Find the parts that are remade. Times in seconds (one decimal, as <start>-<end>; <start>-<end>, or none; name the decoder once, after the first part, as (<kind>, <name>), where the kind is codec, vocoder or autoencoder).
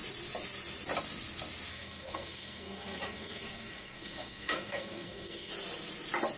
1.7-5.5 (codec, SNAC)